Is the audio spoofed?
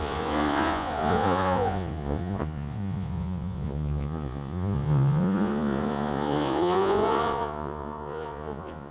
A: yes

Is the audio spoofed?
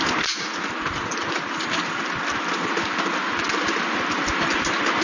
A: no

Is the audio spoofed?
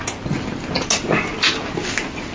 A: no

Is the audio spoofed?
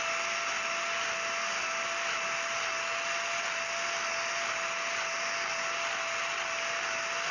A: no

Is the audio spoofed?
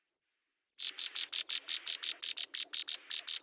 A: no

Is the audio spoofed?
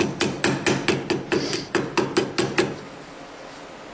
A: no